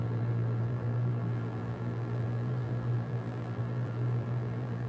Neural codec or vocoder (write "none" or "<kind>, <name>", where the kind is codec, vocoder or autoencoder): vocoder, BigVGAN v2